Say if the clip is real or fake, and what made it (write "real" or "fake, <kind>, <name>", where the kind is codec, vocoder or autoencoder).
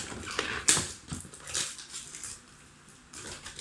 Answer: real